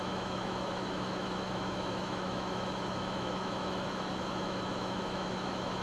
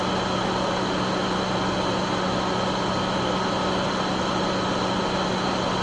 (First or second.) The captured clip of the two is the second